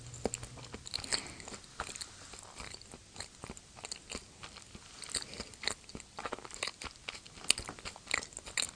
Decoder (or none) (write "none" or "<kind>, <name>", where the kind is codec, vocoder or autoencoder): none